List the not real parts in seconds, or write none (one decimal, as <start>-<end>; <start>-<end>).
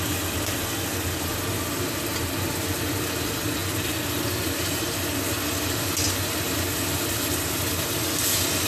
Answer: none